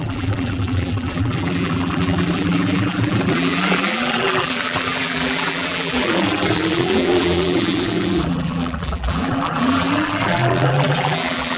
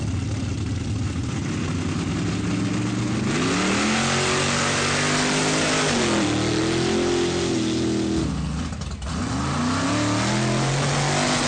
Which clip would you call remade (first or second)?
first